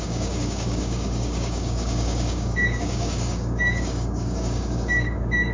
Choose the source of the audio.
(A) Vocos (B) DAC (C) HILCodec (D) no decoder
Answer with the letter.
B